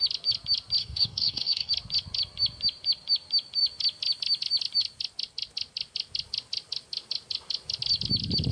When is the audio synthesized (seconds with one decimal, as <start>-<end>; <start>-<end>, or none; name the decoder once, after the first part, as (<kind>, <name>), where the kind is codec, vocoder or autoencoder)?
0.8-1.7 (codec, DAC)